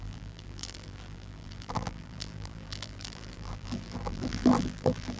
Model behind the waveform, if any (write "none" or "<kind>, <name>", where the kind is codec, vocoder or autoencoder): vocoder, BigVGAN v2